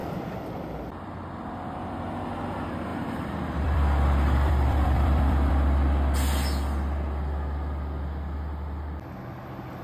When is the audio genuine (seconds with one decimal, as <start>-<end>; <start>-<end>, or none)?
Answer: 1.1-2.9; 5.5-9.8